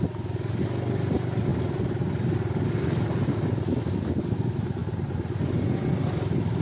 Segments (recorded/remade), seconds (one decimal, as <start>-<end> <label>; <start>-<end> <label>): 0.0-6.6 recorded